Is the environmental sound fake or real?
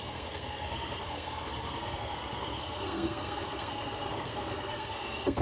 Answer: fake